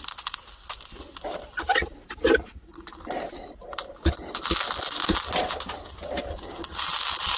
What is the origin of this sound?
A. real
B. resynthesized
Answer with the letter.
A